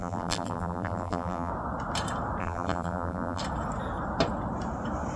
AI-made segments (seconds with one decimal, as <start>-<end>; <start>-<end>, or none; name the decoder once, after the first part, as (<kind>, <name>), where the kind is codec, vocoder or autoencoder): 0.0-1.5 (vocoder, BigVGAN v2); 2.4-3.4